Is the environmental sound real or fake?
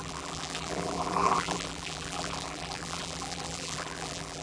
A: fake